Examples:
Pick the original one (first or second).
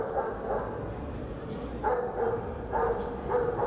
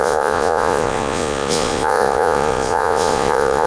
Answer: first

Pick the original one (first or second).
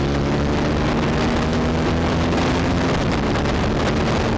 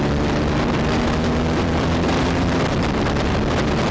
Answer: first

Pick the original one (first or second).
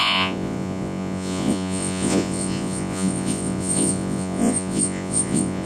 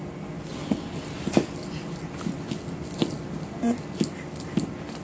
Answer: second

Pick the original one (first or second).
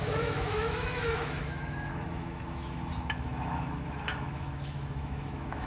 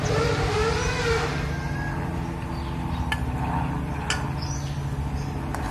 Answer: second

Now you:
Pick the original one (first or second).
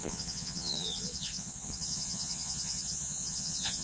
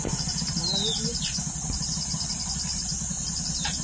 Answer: second